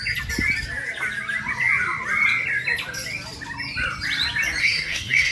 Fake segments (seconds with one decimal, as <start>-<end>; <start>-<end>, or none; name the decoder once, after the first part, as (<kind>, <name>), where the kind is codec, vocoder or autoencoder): 4.6-5.3 (codec, SNAC)